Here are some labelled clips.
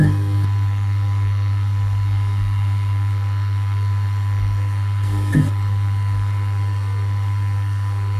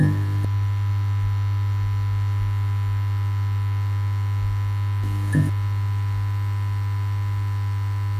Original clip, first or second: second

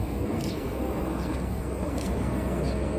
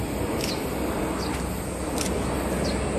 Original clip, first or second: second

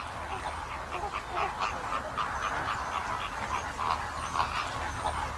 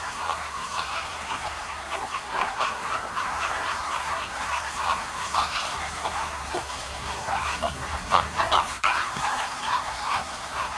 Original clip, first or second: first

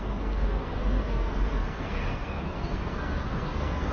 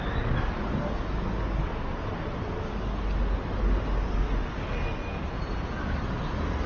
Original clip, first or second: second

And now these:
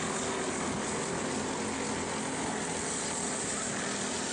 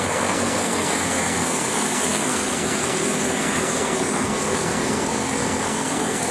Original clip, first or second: first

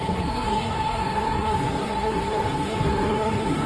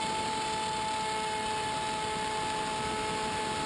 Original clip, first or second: second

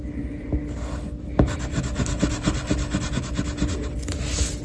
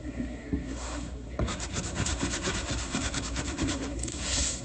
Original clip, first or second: first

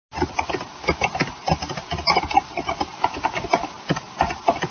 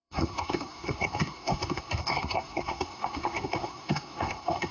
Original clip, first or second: first